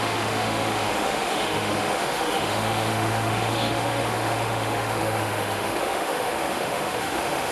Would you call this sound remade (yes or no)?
yes